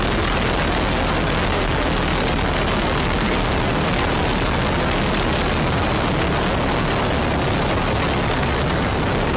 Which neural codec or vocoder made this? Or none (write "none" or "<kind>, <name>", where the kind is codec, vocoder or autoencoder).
none